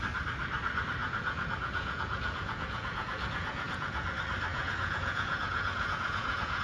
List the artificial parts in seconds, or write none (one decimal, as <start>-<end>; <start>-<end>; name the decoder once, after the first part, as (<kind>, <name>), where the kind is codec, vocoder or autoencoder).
1.0-4.1 (vocoder, Vocos); 4.5-6.6